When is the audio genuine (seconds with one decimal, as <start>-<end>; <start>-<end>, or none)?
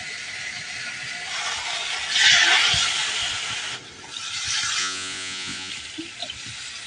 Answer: 0.0-4.8; 5.7-6.9